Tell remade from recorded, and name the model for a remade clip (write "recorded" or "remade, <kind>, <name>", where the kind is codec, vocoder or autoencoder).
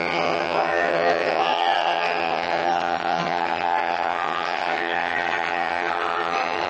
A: remade, vocoder, HiFi-GAN